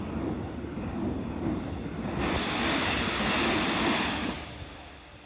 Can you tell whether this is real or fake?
real